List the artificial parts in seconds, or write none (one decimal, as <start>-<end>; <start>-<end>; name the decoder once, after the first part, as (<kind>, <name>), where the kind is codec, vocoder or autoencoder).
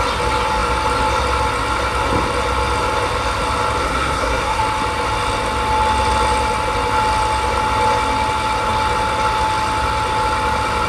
3.8-4.6 (codec, SNAC)